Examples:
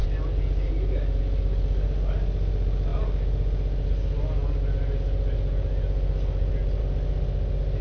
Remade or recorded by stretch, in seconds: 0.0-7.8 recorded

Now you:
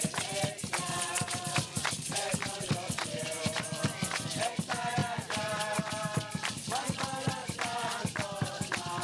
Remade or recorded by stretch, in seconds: 0.0-7.4 recorded; 7.4-8.4 remade; 8.4-9.0 recorded

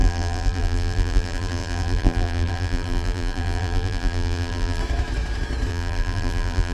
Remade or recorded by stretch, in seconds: 0.0-4.8 remade; 4.8-5.7 recorded; 5.7-6.7 remade

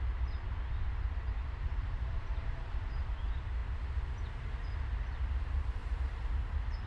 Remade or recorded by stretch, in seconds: 0.0-1.4 recorded; 1.4-2.9 remade; 2.9-5.8 recorded; 5.8-6.3 remade; 6.3-6.9 recorded